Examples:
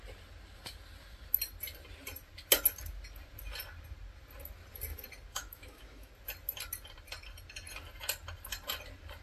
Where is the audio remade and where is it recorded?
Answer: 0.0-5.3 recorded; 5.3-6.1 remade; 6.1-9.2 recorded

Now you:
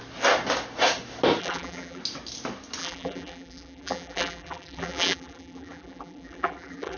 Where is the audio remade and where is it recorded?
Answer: 0.0-1.4 recorded; 1.4-2.0 remade; 2.0-2.8 recorded; 2.8-7.0 remade

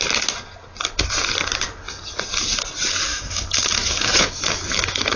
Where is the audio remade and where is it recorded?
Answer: 0.0-3.1 recorded; 3.1-5.2 remade

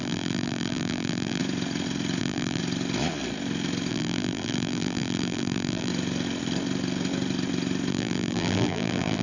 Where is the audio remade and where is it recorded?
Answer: 0.0-1.4 remade; 1.4-2.2 recorded; 2.2-2.6 remade; 2.6-3.9 recorded; 3.9-5.9 remade; 5.9-7.9 recorded; 7.9-9.2 remade

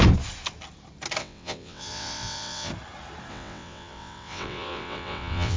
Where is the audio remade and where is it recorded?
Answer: 0.0-1.2 recorded; 1.2-2.7 remade; 2.7-3.3 recorded; 3.3-5.6 remade